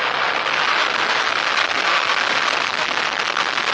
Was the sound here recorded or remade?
recorded